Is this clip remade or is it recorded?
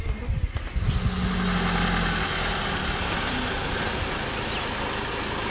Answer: recorded